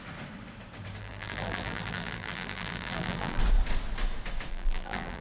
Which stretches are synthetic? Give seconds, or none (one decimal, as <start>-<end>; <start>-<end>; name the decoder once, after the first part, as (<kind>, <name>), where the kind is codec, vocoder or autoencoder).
1.0-3.4 (vocoder, BigVGAN v2); 4.5-5.2